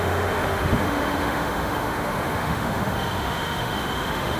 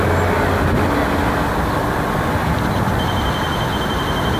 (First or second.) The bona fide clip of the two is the second